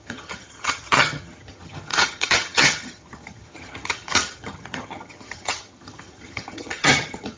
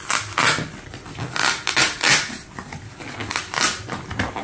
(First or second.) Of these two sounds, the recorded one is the second